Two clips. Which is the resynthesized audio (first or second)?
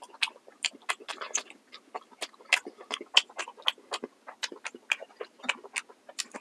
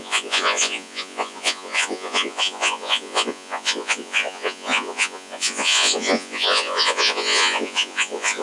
second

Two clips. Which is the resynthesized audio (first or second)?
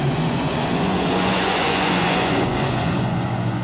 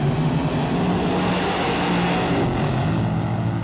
first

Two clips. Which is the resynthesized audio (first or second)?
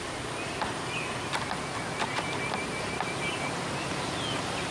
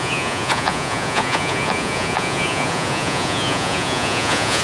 second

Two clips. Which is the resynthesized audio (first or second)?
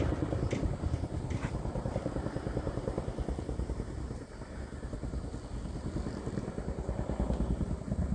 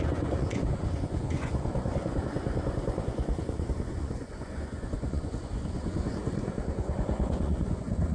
second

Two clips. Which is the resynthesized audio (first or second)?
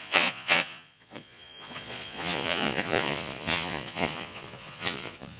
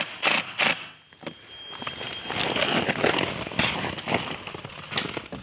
first